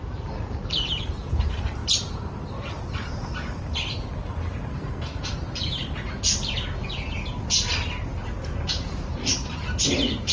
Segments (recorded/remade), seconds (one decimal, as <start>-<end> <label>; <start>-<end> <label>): 0.0-4.7 recorded; 4.7-5.2 remade; 5.2-10.3 recorded